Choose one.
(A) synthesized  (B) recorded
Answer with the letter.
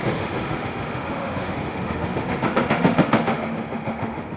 A